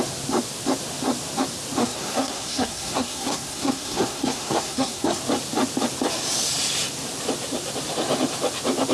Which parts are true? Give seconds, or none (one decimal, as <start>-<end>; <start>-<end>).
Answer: 0.0-1.8; 5.2-8.9